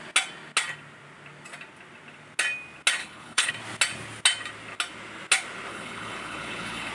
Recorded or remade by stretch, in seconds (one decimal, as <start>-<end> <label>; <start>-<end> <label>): 0.0-3.0 recorded; 3.0-3.5 remade; 3.5-5.7 recorded; 5.7-6.9 remade